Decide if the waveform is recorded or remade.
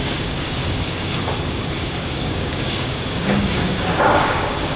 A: remade